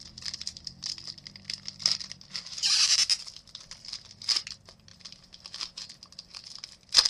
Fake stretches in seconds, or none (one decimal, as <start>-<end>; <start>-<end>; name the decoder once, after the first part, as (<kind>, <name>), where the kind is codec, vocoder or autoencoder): none